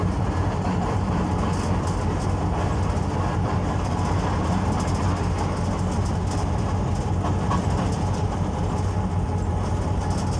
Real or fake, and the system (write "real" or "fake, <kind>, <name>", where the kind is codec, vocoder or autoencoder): real